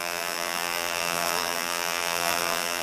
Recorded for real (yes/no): no